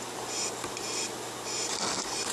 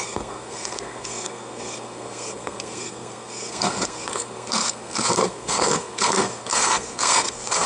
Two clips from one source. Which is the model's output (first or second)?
second